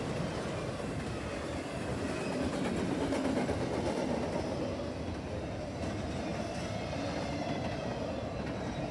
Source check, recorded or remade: recorded